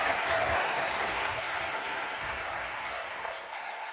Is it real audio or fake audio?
fake